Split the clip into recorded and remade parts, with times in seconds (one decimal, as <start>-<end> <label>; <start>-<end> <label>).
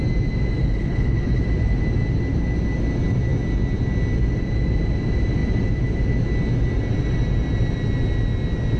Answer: 0.0-0.6 recorded; 0.6-1.4 remade; 1.4-8.8 recorded